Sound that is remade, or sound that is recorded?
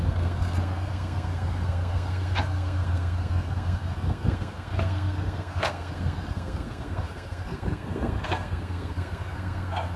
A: remade